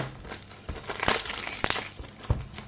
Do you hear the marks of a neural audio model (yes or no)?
no